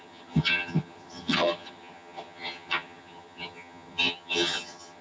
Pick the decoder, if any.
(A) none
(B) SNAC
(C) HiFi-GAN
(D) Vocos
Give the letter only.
C